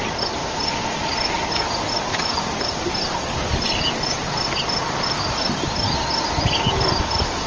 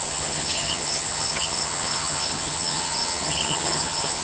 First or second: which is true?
first